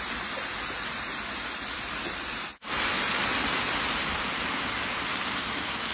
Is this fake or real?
real